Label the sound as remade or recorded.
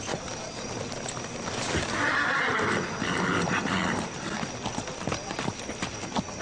recorded